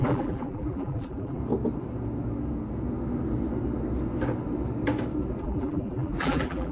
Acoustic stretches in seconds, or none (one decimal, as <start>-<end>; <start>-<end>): 1.4-5.4